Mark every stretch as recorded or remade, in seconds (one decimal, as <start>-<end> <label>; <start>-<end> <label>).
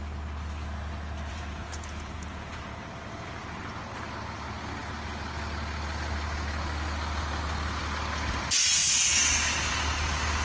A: 0.0-1.3 recorded; 1.3-2.6 remade; 2.6-10.4 recorded